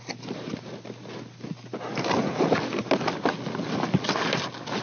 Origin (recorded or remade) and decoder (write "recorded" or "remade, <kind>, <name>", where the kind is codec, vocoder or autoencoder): recorded